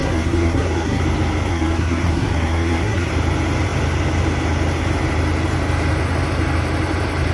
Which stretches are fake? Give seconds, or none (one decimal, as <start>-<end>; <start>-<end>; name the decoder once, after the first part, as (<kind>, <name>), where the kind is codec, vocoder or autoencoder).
0.0-1.0 (codec, SNAC); 1.5-3.1